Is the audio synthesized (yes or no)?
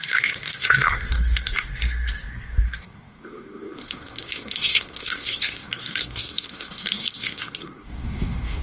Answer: yes